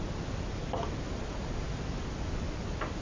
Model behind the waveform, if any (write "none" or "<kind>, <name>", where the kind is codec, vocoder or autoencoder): none